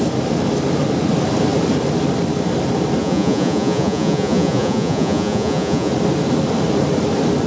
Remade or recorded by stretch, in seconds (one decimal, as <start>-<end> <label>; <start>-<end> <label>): 0.0-3.0 recorded; 3.0-5.9 remade; 5.9-7.5 recorded